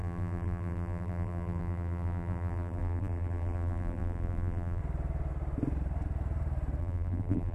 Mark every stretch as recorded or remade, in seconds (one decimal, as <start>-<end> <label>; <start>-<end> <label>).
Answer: 0.0-4.8 remade; 4.8-6.8 recorded; 6.8-7.5 remade